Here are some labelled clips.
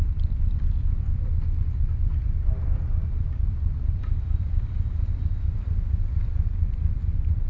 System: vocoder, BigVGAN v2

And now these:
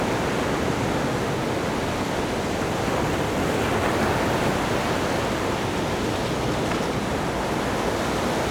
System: none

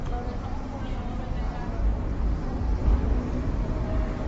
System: none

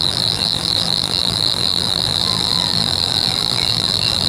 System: vocoder, BigVGAN v2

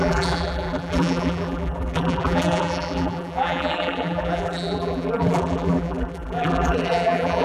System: vocoder, BigVGAN v2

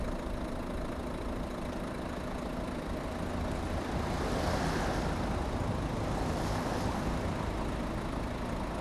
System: none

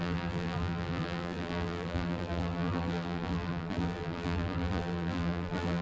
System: vocoder, BigVGAN v2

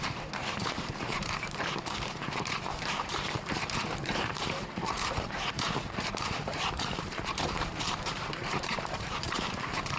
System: vocoder, BigVGAN v2